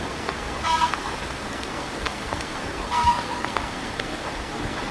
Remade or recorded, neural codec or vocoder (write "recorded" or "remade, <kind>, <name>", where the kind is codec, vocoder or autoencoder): remade, codec, SNAC